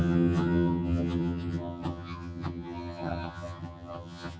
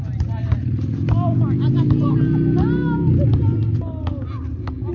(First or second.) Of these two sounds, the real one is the second